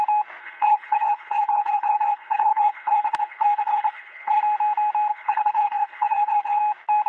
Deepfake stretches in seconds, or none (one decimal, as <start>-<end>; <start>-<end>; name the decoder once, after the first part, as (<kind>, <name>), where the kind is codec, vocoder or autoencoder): 0.4-4.4 (codec, HILCodec); 5.1-6.6